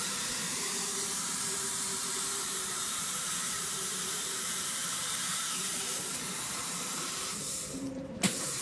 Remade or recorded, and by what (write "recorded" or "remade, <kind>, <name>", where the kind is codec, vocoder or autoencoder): remade, vocoder, BigVGAN v2